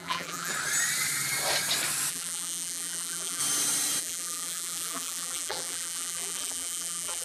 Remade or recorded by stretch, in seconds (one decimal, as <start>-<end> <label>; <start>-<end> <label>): 0.0-0.5 remade; 0.5-2.1 recorded; 2.1-3.4 remade; 3.4-4.0 recorded; 4.0-7.2 remade